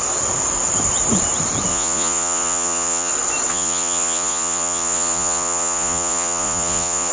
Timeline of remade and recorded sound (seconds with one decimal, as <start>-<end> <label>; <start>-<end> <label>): 0.0-1.7 recorded; 1.7-3.1 remade; 3.1-3.5 recorded; 3.5-7.1 remade